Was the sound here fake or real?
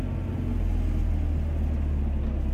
real